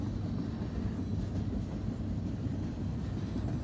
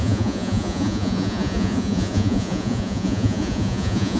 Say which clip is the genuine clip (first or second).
first